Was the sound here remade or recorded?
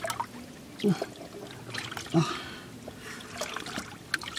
recorded